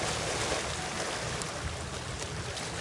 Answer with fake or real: real